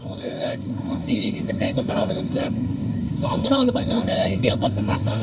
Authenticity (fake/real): fake